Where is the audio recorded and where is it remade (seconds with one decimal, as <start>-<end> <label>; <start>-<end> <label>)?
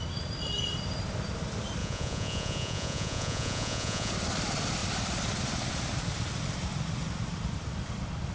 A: 0.0-1.8 recorded; 1.8-4.1 remade; 4.1-8.3 recorded